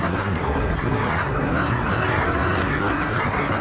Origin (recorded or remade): remade